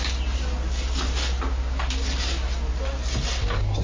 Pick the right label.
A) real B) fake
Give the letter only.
A